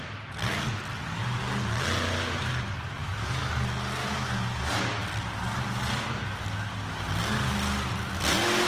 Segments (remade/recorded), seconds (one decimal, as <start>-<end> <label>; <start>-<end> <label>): 0.0-3.0 recorded; 3.0-3.5 remade; 3.5-4.0 recorded; 4.0-4.7 remade; 4.7-8.7 recorded